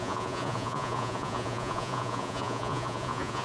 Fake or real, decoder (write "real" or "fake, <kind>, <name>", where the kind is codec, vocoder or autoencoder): fake, vocoder, Vocos